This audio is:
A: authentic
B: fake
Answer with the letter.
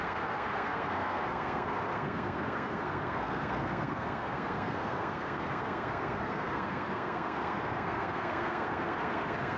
B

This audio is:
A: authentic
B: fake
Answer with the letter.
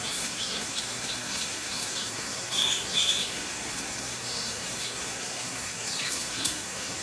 B